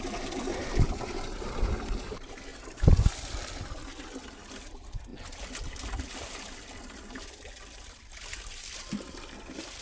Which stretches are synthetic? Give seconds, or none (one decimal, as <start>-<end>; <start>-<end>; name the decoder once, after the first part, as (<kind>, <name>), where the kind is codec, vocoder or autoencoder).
0.0-9.8 (vocoder, BigVGAN v2)